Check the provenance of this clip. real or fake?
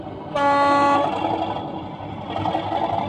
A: real